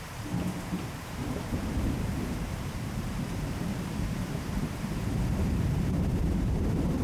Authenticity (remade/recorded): remade